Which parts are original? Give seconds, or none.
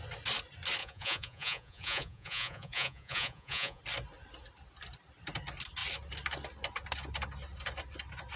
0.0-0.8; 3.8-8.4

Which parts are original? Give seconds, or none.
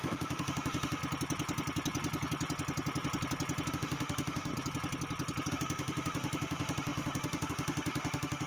1.0-3.7; 4.5-5.5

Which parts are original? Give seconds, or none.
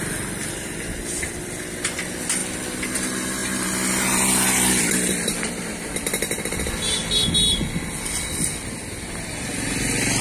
0.0-10.2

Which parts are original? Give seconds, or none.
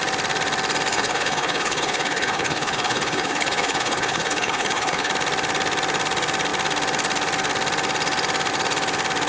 0.0-0.9; 5.1-9.3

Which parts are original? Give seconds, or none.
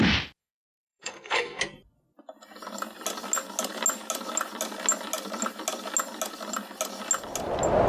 0.0-0.4; 1.6-7.9